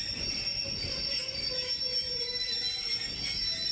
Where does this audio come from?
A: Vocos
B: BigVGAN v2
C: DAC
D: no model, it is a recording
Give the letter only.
D